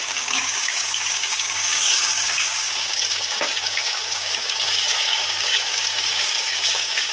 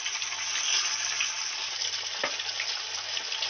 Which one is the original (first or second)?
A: second